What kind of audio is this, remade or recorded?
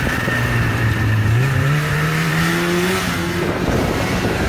remade